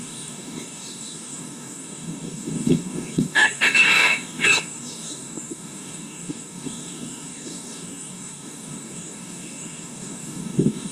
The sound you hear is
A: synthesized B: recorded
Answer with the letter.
A